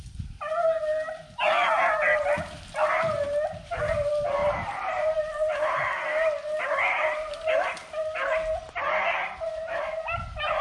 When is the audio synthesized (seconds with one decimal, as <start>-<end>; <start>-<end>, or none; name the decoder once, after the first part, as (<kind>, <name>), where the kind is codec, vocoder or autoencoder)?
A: 4.4-5.8 (vocoder, BigVGAN v2)